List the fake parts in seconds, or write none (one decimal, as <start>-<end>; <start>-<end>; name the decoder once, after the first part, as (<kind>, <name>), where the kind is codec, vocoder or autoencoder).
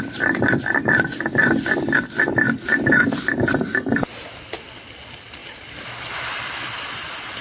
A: none